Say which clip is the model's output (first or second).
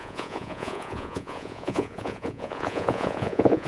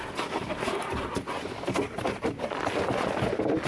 first